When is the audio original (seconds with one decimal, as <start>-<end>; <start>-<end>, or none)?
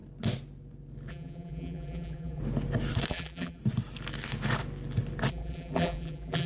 0.0-1.1; 2.4-3.1; 3.6-5.3